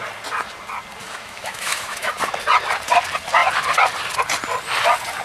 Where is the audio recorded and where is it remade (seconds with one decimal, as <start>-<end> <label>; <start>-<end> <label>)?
0.0-1.0 recorded; 1.0-2.1 remade; 2.1-5.2 recorded